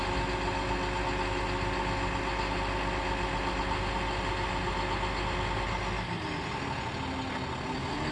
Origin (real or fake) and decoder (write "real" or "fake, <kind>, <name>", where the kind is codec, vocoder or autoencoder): real